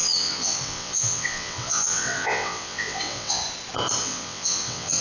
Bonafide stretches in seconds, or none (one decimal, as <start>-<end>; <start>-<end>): 3.4-4.0